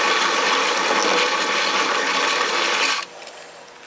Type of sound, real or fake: real